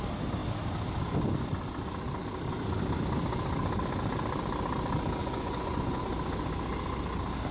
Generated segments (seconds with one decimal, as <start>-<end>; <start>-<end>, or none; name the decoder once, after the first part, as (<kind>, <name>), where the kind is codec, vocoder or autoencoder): 5.2-6.0 (vocoder, Vocos)

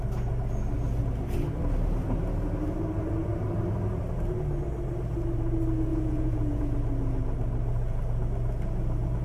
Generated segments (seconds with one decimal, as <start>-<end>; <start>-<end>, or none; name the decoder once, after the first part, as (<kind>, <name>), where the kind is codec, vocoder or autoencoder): 5.9-6.6 (vocoder, Vocos)

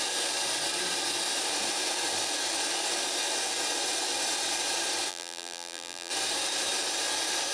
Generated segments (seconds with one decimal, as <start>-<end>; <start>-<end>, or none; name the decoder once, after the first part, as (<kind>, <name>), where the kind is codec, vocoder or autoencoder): 5.1-6.1 (vocoder, BigVGAN v2)

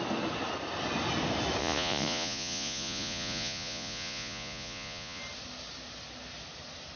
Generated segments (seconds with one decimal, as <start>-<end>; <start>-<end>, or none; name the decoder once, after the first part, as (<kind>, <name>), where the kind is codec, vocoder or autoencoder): 1.6-5.2 (vocoder, Vocos)

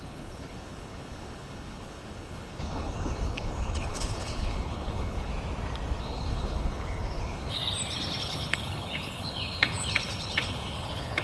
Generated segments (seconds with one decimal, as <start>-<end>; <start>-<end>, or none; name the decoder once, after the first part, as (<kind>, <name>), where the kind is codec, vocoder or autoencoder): 0.0-5.3 (codec, HILCodec); 6.0-7.6; 8.2-11.2

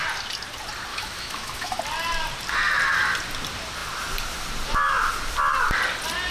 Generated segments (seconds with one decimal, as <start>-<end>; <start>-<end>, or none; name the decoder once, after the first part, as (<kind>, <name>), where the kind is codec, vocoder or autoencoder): 0.9-1.8 (autoencoder, DAC-VAE)

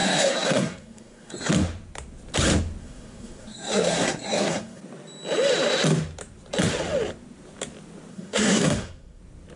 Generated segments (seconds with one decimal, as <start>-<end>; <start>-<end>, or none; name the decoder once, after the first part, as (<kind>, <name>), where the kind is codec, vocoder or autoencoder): 0.0-1.5 (codec, SNAC); 2.8-4.8; 8.1-9.2